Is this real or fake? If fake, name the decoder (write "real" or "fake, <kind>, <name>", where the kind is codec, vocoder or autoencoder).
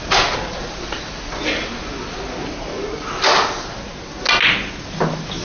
real